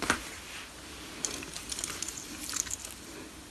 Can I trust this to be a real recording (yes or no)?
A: yes